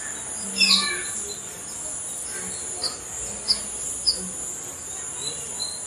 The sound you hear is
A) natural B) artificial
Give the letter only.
A